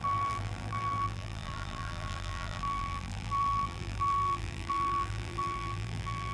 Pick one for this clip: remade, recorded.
remade